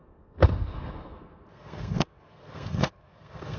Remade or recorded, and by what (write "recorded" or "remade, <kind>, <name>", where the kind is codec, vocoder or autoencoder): remade, codec, SNAC